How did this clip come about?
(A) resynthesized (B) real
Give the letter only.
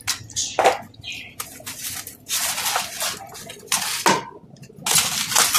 B